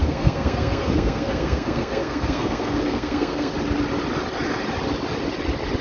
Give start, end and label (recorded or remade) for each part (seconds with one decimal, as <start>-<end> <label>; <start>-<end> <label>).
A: 0.0-3.5 remade; 3.5-5.8 recorded